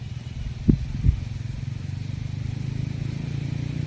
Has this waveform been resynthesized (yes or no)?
no